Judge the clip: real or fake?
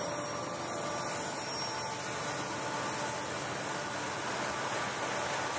real